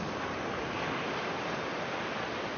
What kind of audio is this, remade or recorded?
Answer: recorded